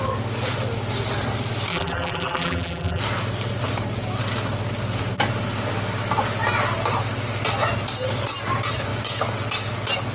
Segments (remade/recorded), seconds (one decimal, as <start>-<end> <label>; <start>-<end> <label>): 0.0-1.7 recorded; 1.7-3.0 remade; 3.0-10.1 recorded

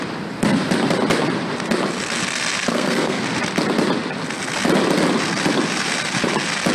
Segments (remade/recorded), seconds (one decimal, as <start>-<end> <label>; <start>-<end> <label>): 0.0-2.7 recorded; 2.7-3.2 remade; 3.2-6.7 recorded

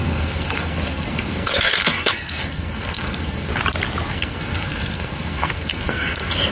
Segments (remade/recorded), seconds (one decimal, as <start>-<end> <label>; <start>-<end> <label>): 0.0-3.5 remade; 3.5-4.1 recorded; 4.1-6.5 remade

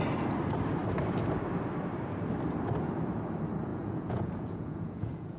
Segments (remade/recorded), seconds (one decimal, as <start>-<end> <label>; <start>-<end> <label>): 0.0-3.7 recorded; 3.7-5.4 remade

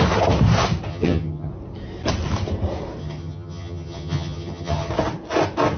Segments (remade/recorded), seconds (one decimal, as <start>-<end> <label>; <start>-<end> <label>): 0.0-0.9 recorded; 0.9-1.5 remade; 1.5-3.0 recorded; 3.0-4.9 remade; 4.9-5.8 recorded

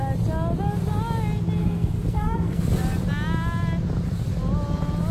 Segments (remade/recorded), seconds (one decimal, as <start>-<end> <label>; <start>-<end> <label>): 0.0-1.6 recorded; 1.6-2.6 remade; 2.6-5.1 recorded

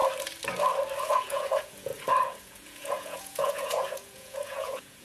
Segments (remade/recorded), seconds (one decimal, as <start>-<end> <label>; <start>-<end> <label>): 0.0-1.1 recorded; 1.1-1.9 remade; 1.9-2.4 recorded; 2.4-5.0 remade

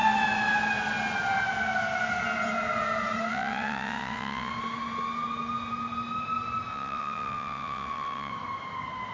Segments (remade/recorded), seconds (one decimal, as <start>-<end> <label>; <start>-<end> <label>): 0.0-3.3 recorded; 3.3-4.5 remade; 4.5-6.7 recorded; 6.7-8.3 remade; 8.3-9.1 recorded